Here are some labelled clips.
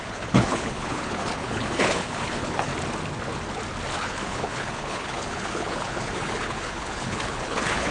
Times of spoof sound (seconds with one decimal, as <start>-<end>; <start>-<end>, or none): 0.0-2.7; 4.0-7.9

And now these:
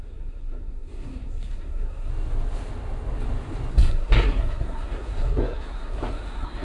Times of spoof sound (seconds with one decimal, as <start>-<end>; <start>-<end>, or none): 0.0-2.1; 3.7-6.6

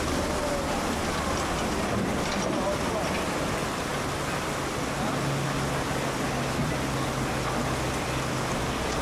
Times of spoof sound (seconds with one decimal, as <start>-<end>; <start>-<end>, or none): none

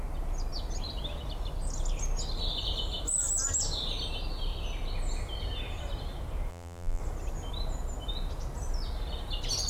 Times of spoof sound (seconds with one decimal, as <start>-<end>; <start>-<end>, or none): 6.5-7.0

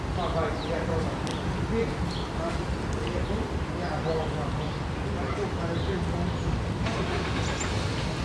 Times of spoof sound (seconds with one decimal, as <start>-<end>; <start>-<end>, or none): none

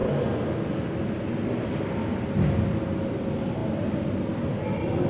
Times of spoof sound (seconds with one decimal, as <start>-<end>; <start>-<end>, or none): none